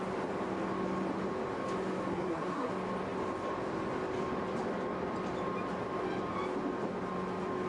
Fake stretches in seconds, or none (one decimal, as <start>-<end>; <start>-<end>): 2.1-2.7